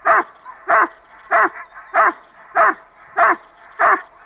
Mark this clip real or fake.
real